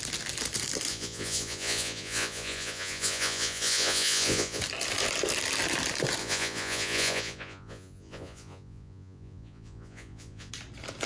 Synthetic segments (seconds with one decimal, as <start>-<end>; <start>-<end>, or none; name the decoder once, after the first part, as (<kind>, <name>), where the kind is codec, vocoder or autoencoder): 0.9-4.6 (vocoder, Vocos); 6.2-10.5